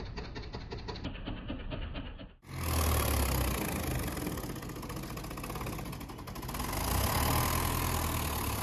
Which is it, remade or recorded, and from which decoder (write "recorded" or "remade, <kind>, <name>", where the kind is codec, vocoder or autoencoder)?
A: recorded